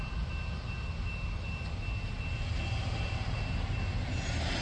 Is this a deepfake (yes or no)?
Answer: no